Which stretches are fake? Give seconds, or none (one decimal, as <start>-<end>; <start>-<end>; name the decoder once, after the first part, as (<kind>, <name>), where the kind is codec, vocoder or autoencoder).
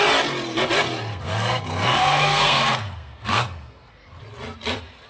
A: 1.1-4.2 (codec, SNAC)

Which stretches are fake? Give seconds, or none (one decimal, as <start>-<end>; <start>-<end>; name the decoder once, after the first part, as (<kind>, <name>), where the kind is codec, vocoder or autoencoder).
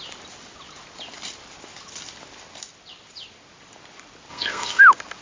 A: 4.3-4.8 (codec, SNAC)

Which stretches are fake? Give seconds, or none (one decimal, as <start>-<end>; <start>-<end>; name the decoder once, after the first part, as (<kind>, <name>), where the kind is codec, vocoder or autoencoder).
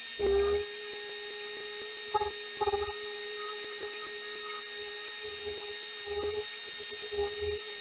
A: none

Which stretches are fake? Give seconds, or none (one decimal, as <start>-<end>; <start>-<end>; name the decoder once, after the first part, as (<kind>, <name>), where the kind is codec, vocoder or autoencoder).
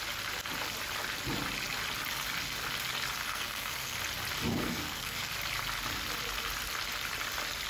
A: 3.2-4.0 (codec, SNAC); 4.5-5.3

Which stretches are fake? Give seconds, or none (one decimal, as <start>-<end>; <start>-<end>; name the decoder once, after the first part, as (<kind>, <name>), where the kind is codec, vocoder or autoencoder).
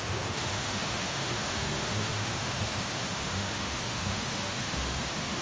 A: 0.0-5.4 (autoencoder, DAC-VAE)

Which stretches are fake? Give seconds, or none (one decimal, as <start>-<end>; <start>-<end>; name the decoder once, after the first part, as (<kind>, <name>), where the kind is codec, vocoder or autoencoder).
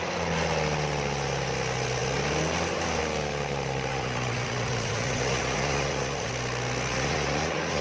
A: 3.9-6.3 (vocoder, Vocos); 6.9-7.8